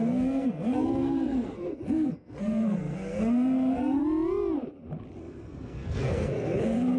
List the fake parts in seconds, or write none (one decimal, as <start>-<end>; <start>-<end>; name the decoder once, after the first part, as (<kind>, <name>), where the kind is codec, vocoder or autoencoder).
0.0-4.0 (codec, SNAC); 5.2-7.0